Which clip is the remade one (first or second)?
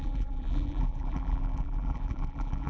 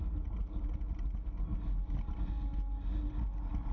first